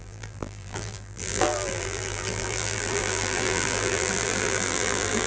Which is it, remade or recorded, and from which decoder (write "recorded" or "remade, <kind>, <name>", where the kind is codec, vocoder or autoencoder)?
remade, vocoder, BigVGAN v2